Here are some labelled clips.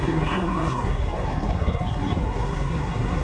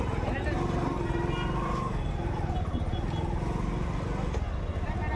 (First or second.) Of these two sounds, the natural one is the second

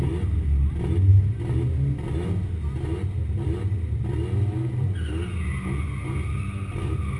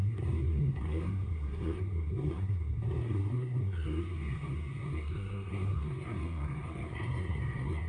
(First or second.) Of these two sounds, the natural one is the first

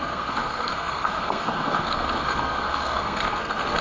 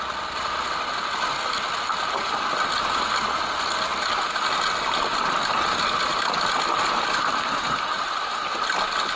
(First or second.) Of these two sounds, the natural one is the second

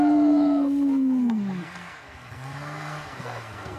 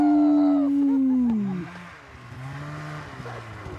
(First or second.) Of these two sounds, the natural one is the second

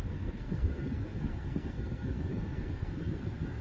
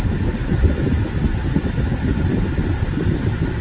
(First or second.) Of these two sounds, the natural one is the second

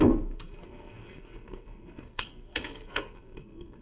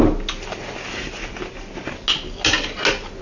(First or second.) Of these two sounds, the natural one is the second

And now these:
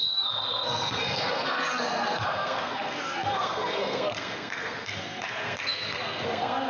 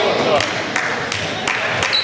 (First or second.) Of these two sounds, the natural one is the second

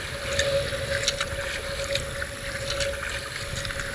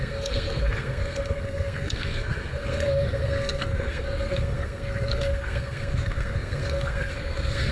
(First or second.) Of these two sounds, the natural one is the first